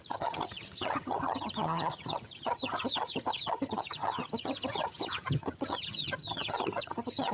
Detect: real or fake fake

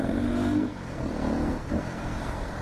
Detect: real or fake fake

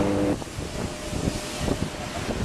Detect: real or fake real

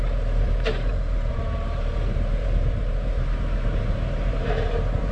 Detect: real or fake fake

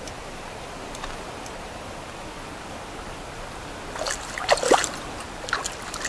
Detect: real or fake real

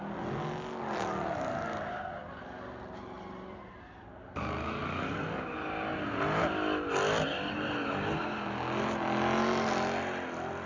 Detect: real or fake real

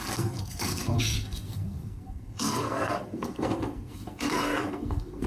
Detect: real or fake fake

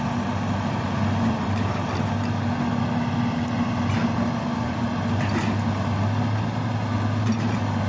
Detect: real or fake real